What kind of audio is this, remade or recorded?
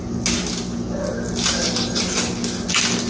recorded